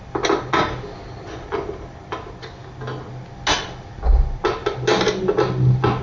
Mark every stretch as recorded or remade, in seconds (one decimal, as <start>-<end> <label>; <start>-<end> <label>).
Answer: 0.0-6.0 recorded